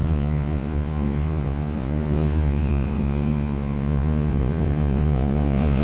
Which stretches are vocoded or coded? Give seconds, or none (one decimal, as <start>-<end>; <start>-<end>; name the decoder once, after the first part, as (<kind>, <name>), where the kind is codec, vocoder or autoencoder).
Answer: 0.0-5.8 (vocoder, Vocos)